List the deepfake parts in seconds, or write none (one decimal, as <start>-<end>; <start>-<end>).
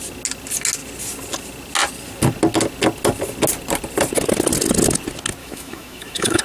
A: 5.4-6.4